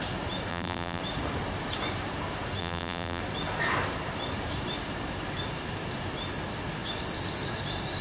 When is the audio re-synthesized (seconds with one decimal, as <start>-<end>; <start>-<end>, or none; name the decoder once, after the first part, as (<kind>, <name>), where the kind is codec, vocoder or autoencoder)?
0.5-1.0 (vocoder, BigVGAN v2); 2.6-3.2